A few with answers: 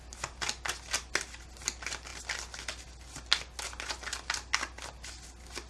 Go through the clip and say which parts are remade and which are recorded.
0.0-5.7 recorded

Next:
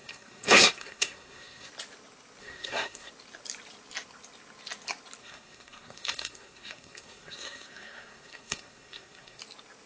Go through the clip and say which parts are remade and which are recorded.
0.0-1.7 remade; 1.7-2.4 recorded; 2.4-3.1 remade; 3.1-5.2 recorded; 5.2-9.4 remade; 9.4-9.9 recorded